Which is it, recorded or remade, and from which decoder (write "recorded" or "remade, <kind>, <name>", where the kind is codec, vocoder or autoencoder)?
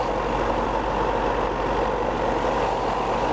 recorded